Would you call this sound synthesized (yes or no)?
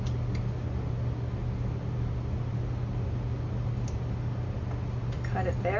no